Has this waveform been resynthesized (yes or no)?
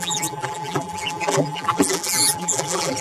yes